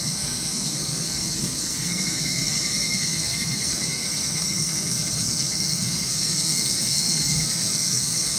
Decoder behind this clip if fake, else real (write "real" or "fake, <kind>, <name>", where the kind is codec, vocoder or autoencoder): fake, codec, SNAC